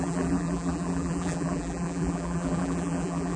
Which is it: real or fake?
fake